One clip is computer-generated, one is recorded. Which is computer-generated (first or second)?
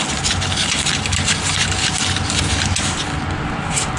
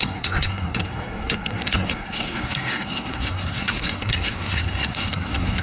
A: second